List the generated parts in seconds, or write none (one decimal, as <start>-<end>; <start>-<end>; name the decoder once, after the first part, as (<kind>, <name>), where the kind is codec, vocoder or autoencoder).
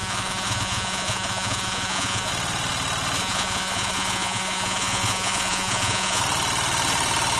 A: 0.0-2.3 (vocoder, Vocos); 3.2-6.2